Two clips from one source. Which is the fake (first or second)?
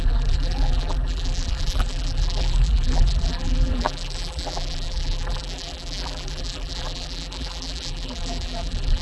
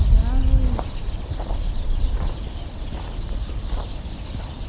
first